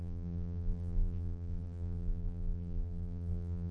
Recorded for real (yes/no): no